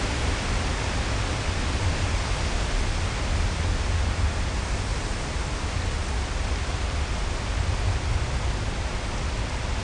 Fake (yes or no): no